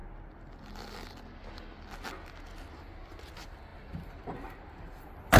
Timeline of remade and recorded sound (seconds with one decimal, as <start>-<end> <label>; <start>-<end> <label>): 0.0-5.4 recorded